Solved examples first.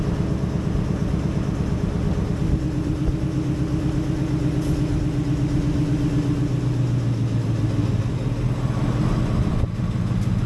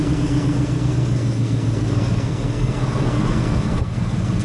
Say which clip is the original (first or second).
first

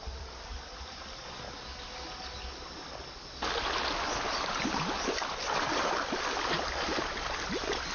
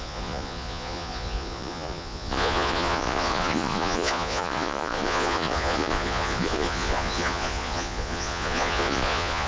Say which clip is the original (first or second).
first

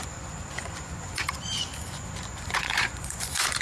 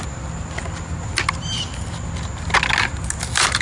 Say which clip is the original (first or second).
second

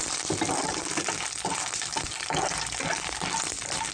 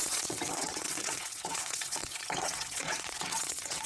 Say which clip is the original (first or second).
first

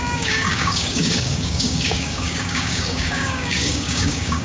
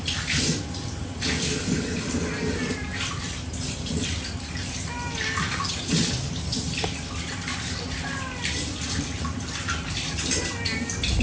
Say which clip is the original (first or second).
second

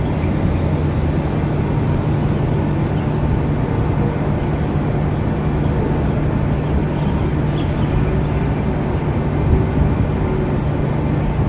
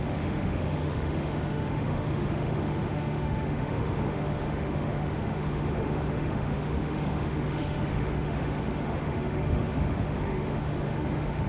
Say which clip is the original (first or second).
first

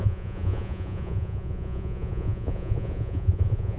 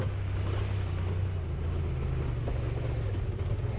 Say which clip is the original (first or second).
second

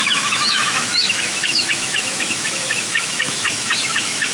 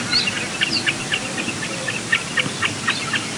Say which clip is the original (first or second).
second